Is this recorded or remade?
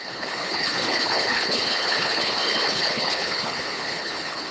remade